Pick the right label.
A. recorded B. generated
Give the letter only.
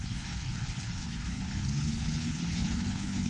B